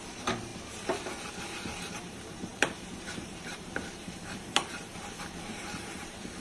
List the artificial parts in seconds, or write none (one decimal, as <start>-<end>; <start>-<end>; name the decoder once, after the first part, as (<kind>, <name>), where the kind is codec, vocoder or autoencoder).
0.0-0.5 (vocoder, BigVGAN v2); 1.8-6.4